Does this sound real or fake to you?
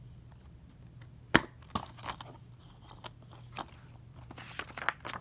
real